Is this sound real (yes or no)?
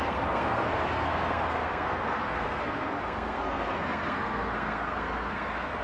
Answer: no